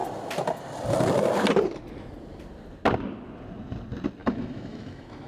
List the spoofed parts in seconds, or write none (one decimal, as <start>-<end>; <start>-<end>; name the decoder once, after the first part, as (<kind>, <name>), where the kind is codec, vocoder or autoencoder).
4.2-5.3 (autoencoder, DAC-VAE)

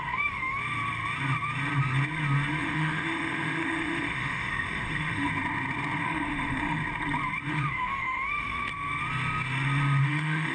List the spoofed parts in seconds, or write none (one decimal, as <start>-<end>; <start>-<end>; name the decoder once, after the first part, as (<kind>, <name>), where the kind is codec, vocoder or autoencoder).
0.0-0.6 (autoencoder, DAC-VAE); 2.6-5.3; 6.0-6.8; 7.5-8.7; 10.0-10.5

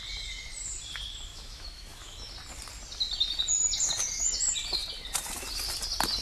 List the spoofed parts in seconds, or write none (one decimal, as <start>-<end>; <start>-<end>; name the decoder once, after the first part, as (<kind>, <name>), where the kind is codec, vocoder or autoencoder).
1.3-2.3 (autoencoder, DAC-VAE)

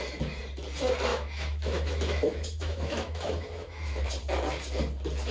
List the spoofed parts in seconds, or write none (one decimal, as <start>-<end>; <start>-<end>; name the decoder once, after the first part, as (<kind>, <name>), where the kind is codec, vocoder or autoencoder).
1.1-4.1 (autoencoder, DAC-VAE)

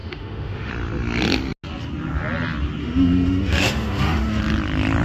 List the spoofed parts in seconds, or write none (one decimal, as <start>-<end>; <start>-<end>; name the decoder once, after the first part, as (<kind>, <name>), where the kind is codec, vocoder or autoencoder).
0.0-0.7 (autoencoder, DAC-VAE); 2.8-4.4